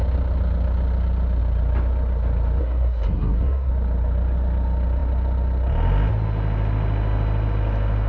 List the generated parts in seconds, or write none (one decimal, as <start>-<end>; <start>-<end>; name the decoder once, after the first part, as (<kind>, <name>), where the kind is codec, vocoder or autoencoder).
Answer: 2.6-3.7 (codec, SNAC)